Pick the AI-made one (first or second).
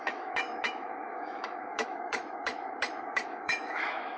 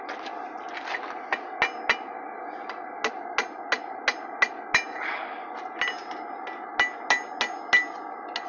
first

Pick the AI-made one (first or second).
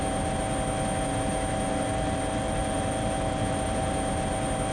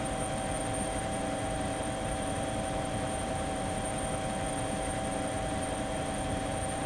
second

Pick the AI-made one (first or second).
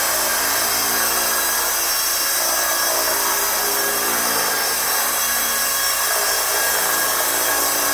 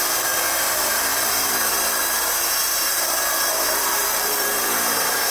second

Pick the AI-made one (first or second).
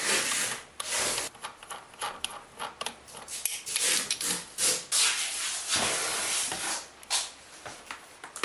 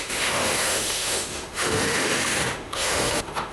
second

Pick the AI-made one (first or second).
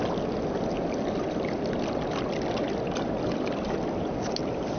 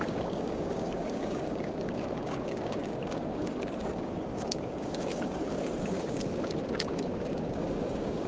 second